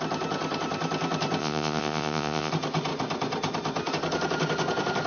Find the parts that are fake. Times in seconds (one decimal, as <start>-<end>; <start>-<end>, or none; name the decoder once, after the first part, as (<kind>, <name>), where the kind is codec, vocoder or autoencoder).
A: 1.4-2.5 (vocoder, Vocos)